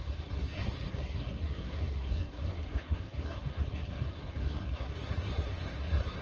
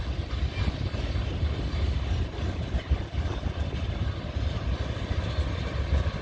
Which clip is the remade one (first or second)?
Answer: first